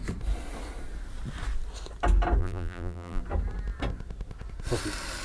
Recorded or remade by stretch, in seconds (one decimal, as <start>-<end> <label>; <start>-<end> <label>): 0.0-2.4 recorded; 2.4-3.2 remade; 3.2-5.2 recorded

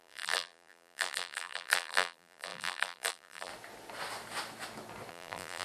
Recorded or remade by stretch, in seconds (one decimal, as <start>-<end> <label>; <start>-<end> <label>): 0.0-3.5 remade; 3.5-5.1 recorded; 5.1-5.6 remade

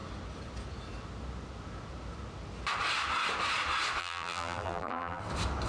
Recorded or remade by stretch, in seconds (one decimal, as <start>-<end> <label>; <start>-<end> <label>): 0.0-4.0 recorded; 4.0-5.2 remade; 5.2-5.7 recorded

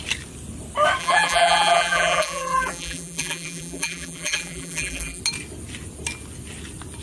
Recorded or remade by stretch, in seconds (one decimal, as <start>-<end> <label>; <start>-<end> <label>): 0.0-1.0 recorded; 1.0-5.2 remade; 5.2-7.0 recorded